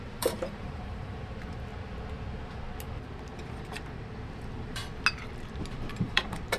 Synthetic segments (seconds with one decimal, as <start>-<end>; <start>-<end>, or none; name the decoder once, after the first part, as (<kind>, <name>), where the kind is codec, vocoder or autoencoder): 0.0-1.7 (vocoder, BigVGAN v2); 3.5-4.8; 5.9-6.6